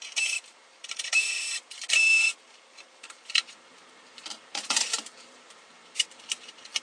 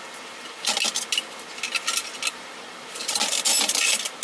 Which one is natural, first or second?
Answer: second